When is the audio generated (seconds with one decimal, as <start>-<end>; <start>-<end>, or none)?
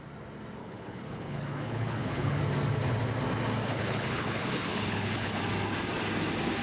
0.6-2.4; 3.7-5.4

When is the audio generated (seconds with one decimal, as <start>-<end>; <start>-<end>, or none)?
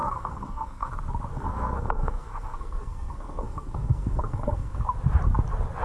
0.0-0.9; 1.3-4.8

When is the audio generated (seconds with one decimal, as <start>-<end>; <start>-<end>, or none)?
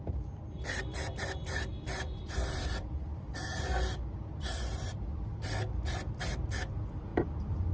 none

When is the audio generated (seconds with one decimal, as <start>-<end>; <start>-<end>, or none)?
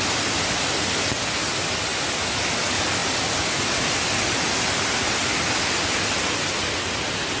none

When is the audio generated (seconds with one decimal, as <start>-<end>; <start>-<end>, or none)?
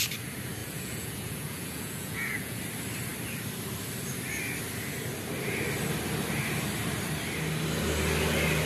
0.6-2.6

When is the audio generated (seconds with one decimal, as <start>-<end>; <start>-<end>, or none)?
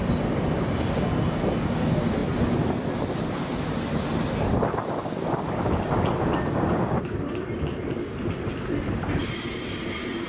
2.2-2.7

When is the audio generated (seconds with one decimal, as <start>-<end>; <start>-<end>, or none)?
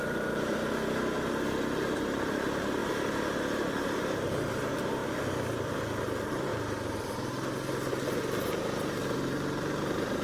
0.0-2.8; 4.0-5.0; 6.0-6.5; 7.9-10.2